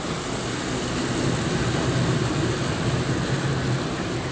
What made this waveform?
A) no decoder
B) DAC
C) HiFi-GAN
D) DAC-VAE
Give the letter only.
A